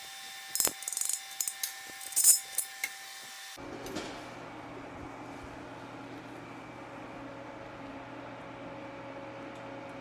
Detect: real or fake real